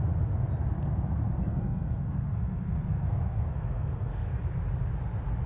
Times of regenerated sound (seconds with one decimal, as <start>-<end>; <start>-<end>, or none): 1.4-4.4